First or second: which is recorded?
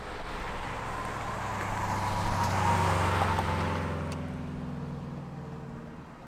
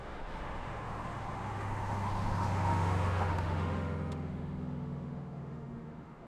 first